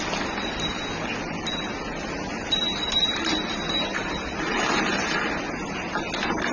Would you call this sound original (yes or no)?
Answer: yes